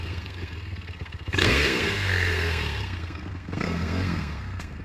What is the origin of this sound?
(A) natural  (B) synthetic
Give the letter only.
B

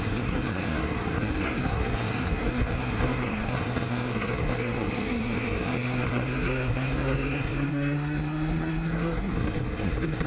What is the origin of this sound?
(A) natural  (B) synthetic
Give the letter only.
B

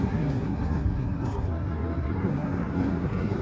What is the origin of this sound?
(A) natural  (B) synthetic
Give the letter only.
B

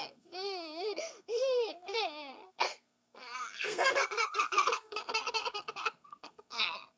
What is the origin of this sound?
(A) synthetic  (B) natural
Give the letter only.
A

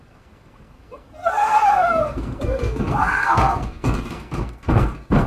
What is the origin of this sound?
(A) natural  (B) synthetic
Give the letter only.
B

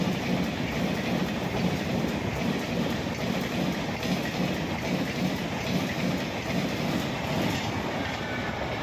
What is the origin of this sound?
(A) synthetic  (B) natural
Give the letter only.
B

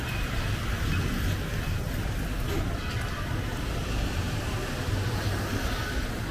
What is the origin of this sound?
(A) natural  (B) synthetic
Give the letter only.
A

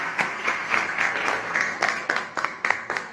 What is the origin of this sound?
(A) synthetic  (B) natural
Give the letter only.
A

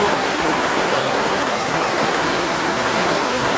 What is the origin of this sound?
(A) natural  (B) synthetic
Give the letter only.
B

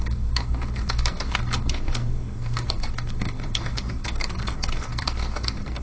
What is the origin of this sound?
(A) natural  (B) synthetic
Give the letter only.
B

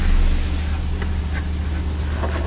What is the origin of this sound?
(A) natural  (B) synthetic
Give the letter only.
A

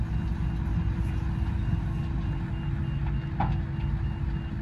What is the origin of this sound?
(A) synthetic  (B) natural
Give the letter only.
B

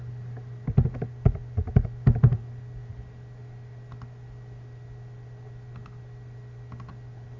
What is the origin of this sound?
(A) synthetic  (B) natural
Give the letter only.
B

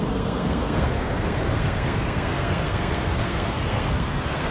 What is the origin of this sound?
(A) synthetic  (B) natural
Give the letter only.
A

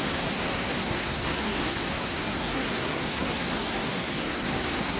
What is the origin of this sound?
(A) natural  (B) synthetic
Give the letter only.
B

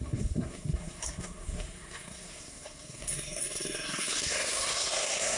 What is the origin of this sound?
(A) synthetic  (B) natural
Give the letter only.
A